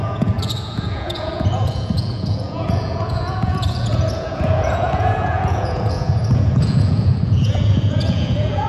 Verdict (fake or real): fake